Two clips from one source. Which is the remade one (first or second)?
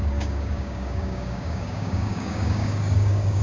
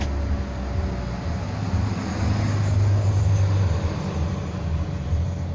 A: first